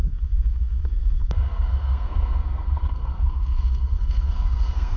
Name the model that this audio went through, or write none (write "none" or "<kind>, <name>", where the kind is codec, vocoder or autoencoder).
codec, SNAC